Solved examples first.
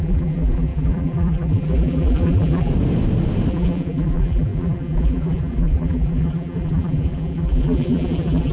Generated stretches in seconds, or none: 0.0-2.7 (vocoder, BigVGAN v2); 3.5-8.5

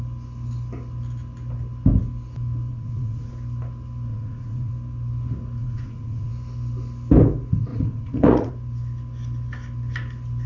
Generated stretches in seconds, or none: 2.7-3.3 (vocoder, Vocos); 4.1-4.7; 5.6-6.3; 7.7-8.5

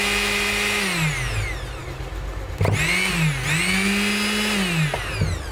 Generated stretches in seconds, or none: none